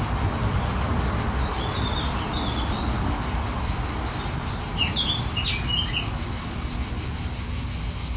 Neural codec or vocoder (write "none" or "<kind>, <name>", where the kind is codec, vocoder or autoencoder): none